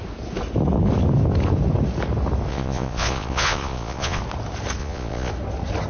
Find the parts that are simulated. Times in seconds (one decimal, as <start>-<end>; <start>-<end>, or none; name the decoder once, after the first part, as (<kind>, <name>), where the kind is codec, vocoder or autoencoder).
2.5-4.2 (vocoder, Vocos); 4.8-5.3